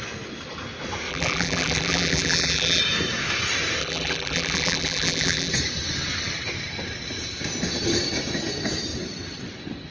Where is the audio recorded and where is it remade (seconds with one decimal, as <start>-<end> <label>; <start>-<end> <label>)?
0.0-1.1 recorded; 1.1-2.8 remade; 2.8-3.8 recorded; 3.8-5.5 remade; 5.5-9.9 recorded